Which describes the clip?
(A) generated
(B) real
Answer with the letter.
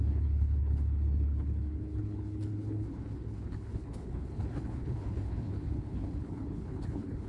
A